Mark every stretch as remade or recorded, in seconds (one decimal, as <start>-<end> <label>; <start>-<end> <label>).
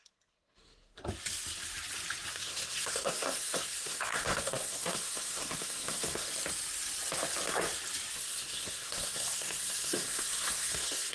0.0-1.0 remade; 1.0-2.3 recorded; 2.3-6.3 remade; 6.3-8.1 recorded; 8.1-11.1 remade